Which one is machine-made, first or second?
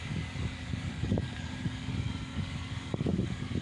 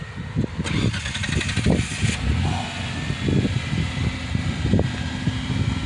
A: first